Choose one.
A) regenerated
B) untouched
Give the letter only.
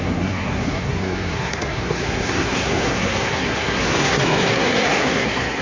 A